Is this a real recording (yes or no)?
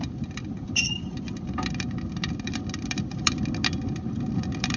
no